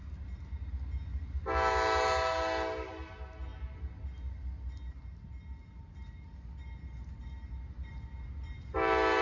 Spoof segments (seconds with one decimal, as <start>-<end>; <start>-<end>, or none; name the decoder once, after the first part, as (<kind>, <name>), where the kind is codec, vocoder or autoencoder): none